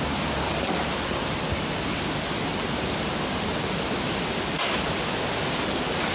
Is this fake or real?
real